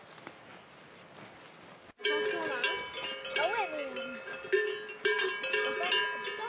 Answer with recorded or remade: recorded